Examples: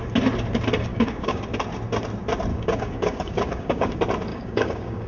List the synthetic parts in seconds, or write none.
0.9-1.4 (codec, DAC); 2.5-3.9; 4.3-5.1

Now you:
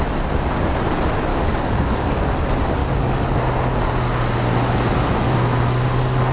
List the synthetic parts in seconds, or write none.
1.3-2.2 (codec, DAC); 2.8-3.4

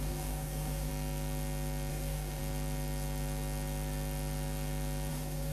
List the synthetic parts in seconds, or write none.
0.0-0.9 (codec, DAC); 1.9-2.4; 5.1-5.5

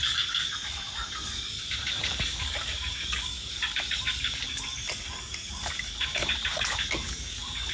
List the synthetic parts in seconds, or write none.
0.0-7.7 (codec, DAC)

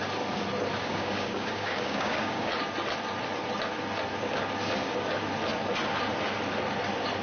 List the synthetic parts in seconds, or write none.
0.8-2.5 (codec, DAC)